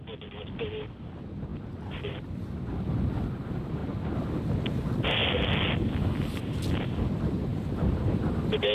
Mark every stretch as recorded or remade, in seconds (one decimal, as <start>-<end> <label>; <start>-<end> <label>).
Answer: 0.0-1.5 recorded; 1.5-2.1 remade; 2.1-7.5 recorded; 7.5-8.2 remade; 8.2-8.7 recorded

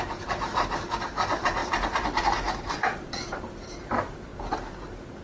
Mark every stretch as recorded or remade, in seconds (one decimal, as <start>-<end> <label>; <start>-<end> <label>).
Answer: 0.0-5.2 remade

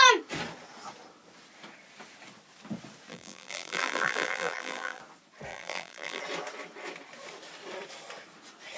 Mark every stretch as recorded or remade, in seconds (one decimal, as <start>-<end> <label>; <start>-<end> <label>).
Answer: 0.0-3.1 recorded; 3.1-5.0 remade; 5.0-5.5 recorded; 5.5-6.2 remade; 6.2-8.8 recorded

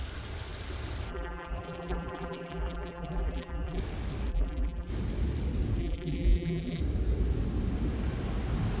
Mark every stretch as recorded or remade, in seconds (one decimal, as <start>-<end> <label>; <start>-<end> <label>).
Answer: 0.0-1.1 recorded; 1.1-3.8 remade; 3.8-4.3 recorded; 4.3-4.9 remade; 4.9-5.8 recorded; 5.8-6.8 remade; 6.8-8.8 recorded

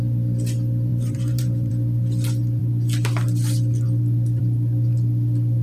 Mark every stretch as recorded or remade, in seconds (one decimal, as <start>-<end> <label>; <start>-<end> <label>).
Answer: 0.0-0.9 recorded; 0.9-1.7 remade; 1.7-5.6 recorded

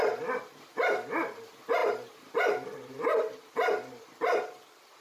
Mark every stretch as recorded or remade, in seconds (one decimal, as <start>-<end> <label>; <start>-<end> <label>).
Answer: 0.0-5.0 recorded

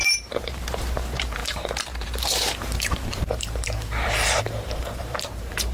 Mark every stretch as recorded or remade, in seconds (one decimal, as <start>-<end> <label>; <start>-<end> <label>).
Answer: 0.0-5.7 remade

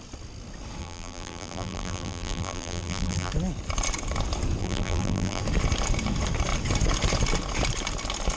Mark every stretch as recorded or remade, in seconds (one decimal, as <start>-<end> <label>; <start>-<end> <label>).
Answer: 0.0-0.8 recorded; 0.8-3.3 remade; 3.3-4.6 recorded; 4.6-5.4 remade; 5.4-8.4 recorded